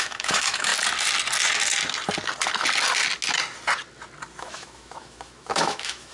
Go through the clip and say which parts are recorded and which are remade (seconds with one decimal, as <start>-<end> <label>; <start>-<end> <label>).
0.0-0.7 remade; 0.7-4.4 recorded; 4.4-6.1 remade